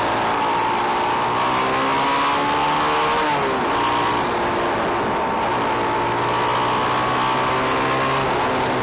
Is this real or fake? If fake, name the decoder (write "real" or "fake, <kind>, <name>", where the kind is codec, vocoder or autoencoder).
real